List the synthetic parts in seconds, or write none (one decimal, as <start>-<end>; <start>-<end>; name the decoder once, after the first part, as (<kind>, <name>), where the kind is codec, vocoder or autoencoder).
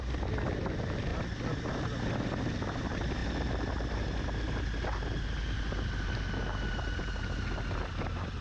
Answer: none